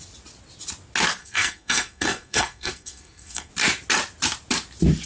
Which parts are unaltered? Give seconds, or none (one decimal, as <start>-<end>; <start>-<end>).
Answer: 0.0-1.2; 3.5-5.1